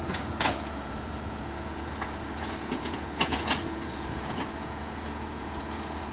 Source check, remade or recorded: remade